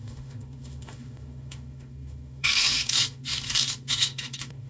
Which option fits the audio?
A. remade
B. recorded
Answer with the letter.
A